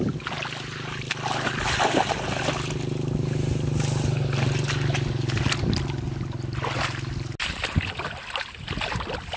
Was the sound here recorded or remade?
recorded